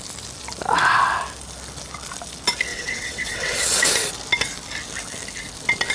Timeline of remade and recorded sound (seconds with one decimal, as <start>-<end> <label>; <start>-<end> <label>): 0.0-2.7 recorded; 2.7-3.9 remade; 3.9-5.9 recorded